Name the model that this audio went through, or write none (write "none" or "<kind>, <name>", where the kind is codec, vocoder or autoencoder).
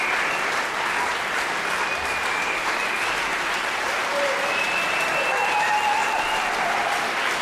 none